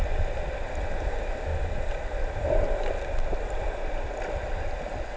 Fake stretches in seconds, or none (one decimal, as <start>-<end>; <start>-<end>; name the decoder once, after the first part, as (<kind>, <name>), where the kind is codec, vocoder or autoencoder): none